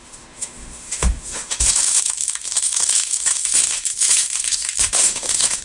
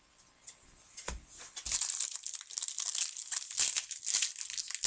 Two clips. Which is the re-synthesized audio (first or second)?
first